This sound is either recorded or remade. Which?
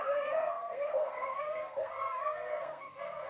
remade